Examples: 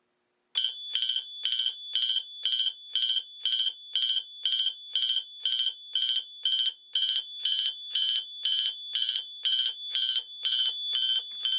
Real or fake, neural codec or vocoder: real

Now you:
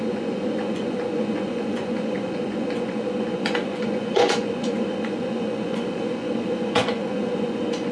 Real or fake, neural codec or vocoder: fake, vocoder, Vocos